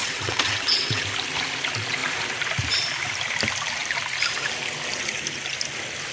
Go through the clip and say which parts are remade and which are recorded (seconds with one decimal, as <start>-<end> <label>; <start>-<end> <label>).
0.0-1.0 remade; 1.0-6.1 recorded